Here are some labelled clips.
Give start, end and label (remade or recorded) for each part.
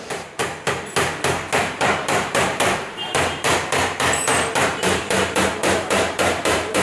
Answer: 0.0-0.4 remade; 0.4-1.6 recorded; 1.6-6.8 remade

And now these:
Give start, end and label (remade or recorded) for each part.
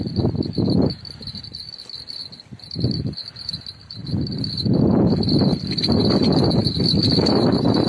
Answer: 0.0-7.9 recorded